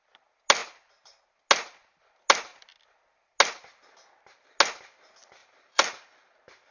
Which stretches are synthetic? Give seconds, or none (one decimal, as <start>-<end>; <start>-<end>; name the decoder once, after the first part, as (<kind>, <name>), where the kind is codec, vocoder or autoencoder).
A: 5.4-6.3 (vocoder, BigVGAN v2)